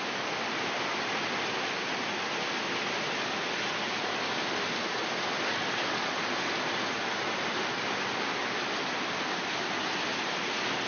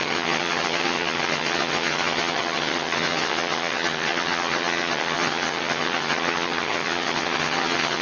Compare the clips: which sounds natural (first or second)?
first